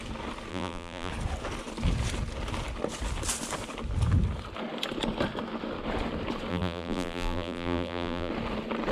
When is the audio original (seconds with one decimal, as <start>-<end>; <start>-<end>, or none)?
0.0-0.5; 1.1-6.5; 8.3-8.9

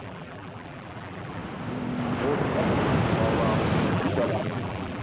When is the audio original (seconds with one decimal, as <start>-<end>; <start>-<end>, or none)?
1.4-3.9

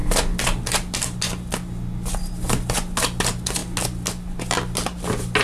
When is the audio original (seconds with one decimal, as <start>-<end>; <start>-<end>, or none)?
0.0-5.4

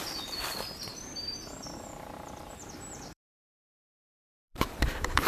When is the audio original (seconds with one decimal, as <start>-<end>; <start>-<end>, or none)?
none

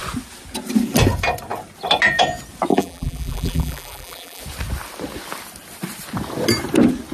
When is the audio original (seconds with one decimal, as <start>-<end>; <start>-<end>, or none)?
0.0-2.7; 4.4-7.1

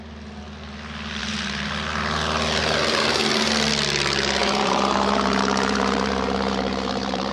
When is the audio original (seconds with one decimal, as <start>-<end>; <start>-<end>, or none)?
0.0-1.2; 1.7-2.6; 3.5-4.4

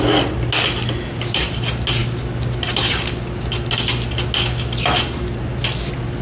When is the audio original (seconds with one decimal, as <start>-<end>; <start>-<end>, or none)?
0.0-6.2